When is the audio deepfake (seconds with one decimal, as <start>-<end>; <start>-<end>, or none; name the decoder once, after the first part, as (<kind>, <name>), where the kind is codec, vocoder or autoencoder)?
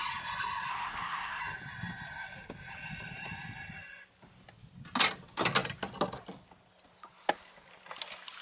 0.7-1.4 (codec, SNAC)